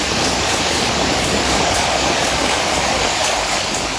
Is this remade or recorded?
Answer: remade